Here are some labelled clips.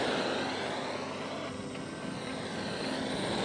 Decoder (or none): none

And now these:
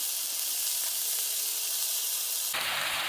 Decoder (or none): none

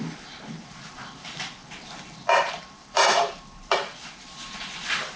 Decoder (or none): vocoder, BigVGAN v2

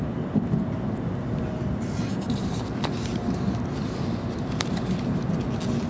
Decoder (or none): none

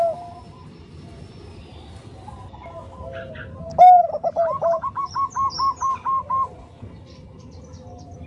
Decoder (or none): none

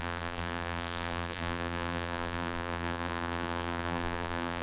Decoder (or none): vocoder, BigVGAN v2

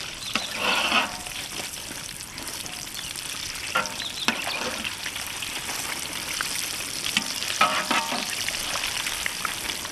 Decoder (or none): vocoder, BigVGAN v2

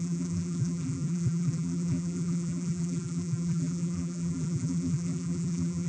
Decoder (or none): vocoder, BigVGAN v2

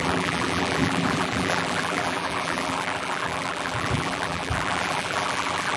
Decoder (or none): vocoder, BigVGAN v2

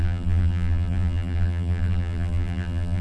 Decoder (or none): vocoder, BigVGAN v2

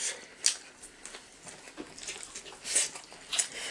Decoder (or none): none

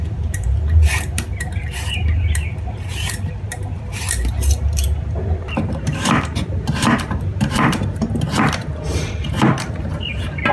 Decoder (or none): vocoder, BigVGAN v2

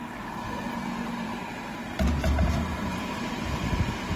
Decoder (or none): vocoder, BigVGAN v2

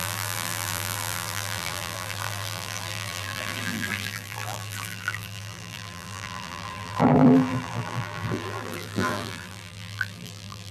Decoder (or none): vocoder, BigVGAN v2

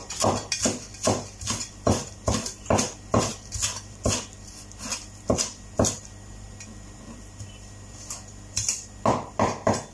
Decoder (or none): vocoder, BigVGAN v2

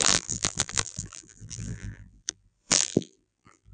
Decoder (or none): vocoder, BigVGAN v2